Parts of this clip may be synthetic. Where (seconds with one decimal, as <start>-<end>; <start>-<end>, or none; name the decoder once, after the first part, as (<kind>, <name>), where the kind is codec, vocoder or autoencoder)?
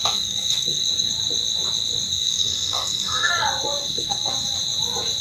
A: 0.0-1.1 (codec, SNAC); 2.1-3.3; 3.8-4.3